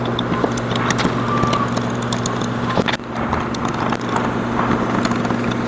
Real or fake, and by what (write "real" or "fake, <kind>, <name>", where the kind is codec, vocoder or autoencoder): real